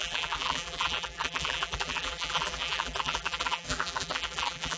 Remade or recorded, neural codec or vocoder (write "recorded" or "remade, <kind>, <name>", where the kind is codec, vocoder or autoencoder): remade, vocoder, BigVGAN v2